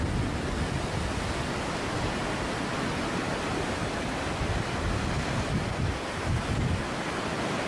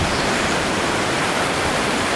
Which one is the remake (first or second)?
second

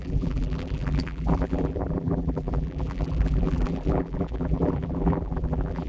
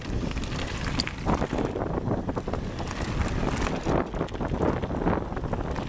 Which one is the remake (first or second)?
first